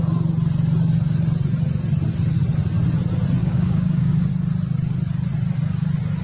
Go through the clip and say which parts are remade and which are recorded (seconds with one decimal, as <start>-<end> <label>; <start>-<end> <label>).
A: 0.0-3.4 recorded; 3.4-4.3 remade; 4.3-6.2 recorded